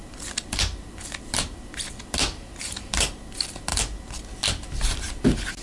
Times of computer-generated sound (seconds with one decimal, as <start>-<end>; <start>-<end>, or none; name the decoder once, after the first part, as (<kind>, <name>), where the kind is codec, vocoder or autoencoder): 2.5-3.1 (vocoder, BigVGAN v2)